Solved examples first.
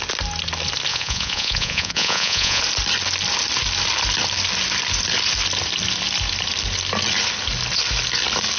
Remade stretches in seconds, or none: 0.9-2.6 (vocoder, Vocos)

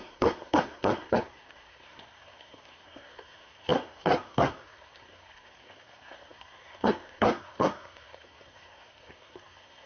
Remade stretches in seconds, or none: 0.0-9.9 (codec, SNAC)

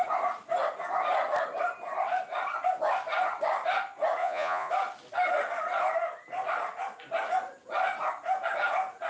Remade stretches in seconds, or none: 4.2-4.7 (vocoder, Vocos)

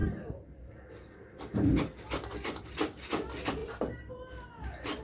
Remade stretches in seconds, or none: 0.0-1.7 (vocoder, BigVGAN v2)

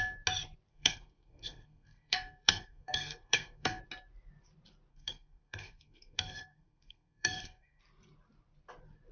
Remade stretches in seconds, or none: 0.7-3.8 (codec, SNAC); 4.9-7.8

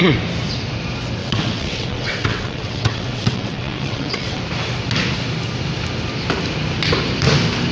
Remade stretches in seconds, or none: 1.2-4.4 (vocoder, WaveNeXt)

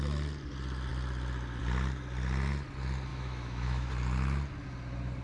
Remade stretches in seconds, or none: 3.1-3.9 (autoencoder, DAC-VAE)

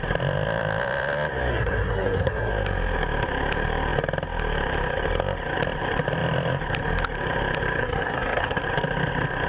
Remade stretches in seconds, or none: 1.5-2.5 (codec, SNAC); 7.8-8.6